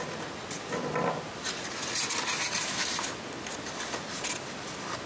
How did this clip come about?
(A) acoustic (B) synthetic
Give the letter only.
A